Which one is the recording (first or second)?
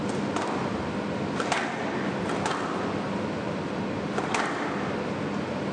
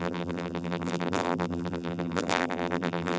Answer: first